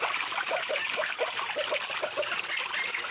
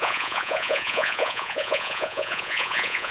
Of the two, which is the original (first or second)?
first